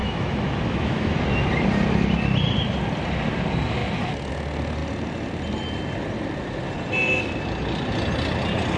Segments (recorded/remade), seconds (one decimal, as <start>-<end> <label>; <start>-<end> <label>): 0.0-1.2 remade; 1.2-8.8 recorded